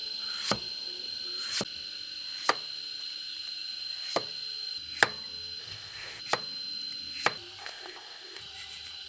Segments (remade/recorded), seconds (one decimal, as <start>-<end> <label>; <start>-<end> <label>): 0.0-5.6 recorded; 5.6-6.2 remade; 6.2-7.6 recorded; 7.6-8.4 remade; 8.4-9.1 recorded